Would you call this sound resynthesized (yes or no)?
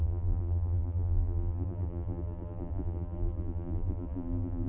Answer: yes